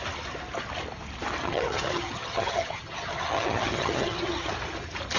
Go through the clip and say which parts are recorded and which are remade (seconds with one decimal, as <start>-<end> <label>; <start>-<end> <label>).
0.0-1.4 recorded; 1.4-4.5 remade; 4.5-5.2 recorded